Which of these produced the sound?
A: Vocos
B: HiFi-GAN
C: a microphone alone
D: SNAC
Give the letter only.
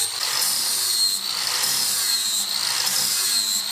C